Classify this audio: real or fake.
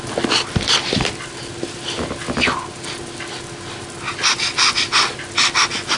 real